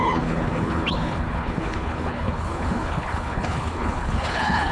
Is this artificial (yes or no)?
yes